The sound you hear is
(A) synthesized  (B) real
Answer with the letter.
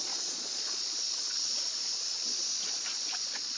A